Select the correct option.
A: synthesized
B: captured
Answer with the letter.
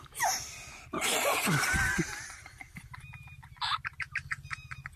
B